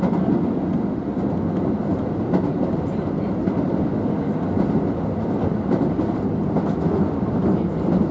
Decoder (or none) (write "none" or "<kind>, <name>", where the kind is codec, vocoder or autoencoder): none